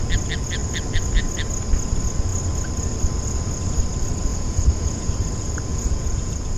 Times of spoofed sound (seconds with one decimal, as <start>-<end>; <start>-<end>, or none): 4.3-5.1; 5.7-6.6